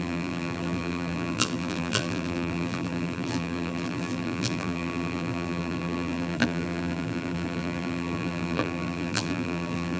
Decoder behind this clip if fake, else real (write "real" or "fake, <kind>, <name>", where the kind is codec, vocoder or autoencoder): fake, vocoder, BigVGAN v2